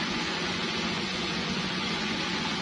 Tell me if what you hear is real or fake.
fake